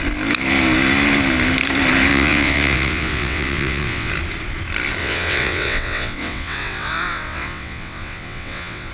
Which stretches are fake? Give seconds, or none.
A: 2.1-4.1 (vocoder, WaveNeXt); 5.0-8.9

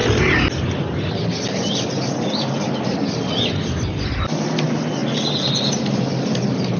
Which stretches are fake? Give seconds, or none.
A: none

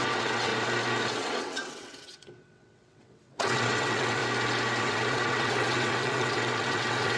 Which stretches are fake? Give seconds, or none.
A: 0.0-0.5 (vocoder, WaveNeXt); 1.1-4.2; 4.8-7.2